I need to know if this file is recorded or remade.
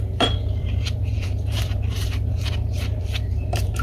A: remade